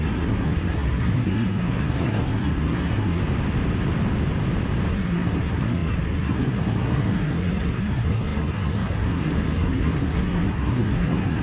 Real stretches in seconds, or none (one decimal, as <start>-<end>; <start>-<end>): 3.2-4.9